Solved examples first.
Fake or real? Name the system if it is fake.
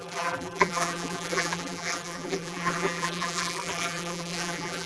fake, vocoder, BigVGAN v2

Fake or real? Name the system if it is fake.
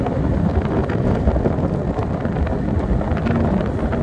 real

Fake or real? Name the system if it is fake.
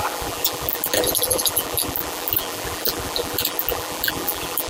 fake, vocoder, BigVGAN v2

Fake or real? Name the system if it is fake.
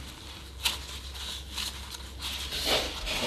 real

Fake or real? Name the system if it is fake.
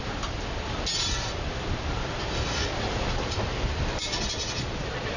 real